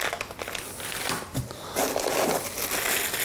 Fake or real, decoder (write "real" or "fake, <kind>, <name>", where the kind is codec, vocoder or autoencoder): real